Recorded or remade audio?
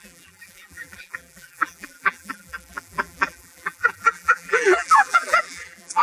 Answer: remade